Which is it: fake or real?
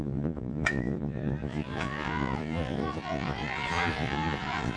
fake